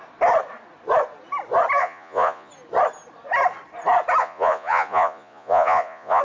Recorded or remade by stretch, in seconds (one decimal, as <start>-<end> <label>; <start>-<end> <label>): 0.0-1.8 recorded; 1.8-2.5 remade; 2.5-4.2 recorded; 4.2-6.2 remade